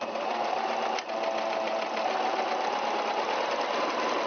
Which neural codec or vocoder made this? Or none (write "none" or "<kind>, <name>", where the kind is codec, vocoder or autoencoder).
none